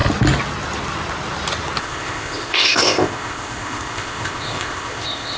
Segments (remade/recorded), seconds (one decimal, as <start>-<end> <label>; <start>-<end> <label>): 0.0-1.8 recorded; 1.8-5.4 remade